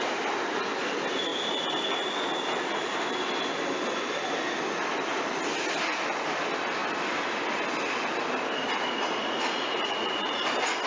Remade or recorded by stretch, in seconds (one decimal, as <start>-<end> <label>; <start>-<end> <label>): 0.0-9.2 recorded; 9.2-10.4 remade; 10.4-10.9 recorded